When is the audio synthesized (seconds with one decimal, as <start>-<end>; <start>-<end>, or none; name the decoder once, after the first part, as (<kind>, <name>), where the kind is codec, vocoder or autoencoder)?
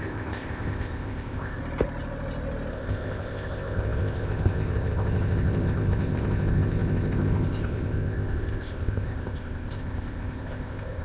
0.0-1.6 (codec, ZipCodec); 2.7-11.0